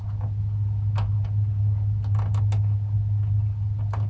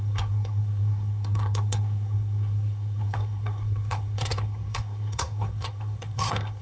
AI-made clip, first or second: second